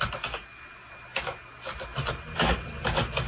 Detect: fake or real real